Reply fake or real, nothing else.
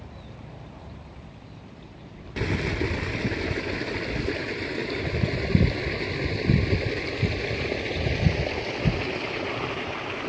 real